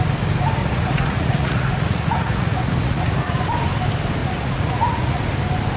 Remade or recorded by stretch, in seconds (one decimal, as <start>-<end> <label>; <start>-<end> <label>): 0.0-0.6 recorded; 0.6-3.4 remade; 3.4-4.2 recorded; 4.2-5.2 remade; 5.2-5.8 recorded